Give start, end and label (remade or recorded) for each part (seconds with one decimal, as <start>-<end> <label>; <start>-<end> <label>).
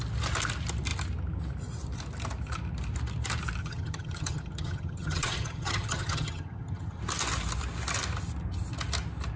0.0-3.6 recorded; 3.6-7.0 remade; 7.0-9.4 recorded